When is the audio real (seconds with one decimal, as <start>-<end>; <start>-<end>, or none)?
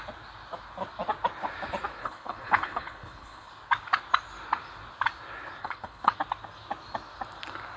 0.0-2.0; 3.5-5.6; 6.1-7.8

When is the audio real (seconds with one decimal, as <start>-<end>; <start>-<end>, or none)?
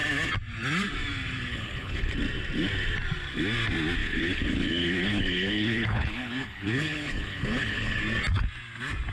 0.0-1.5; 2.1-4.0; 8.0-9.1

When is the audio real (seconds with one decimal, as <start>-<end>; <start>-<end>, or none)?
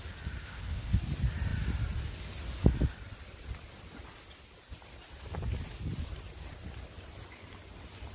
0.0-0.4; 1.0-8.1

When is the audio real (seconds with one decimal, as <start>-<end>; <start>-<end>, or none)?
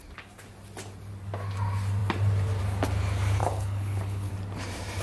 0.0-3.4; 4.3-5.0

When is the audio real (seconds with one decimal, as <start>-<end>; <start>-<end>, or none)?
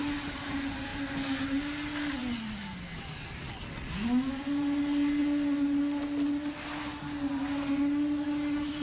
0.0-8.8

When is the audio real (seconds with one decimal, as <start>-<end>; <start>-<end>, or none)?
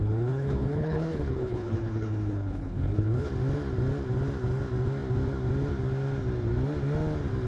3.3-7.5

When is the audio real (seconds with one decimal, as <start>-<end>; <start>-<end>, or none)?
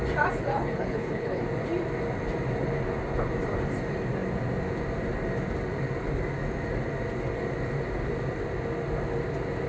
0.0-0.5; 1.4-9.7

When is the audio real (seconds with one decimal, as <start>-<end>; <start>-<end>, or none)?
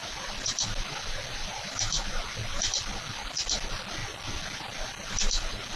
0.0-5.8